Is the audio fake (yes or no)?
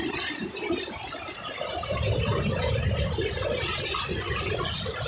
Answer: no